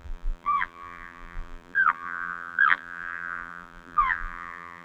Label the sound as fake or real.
fake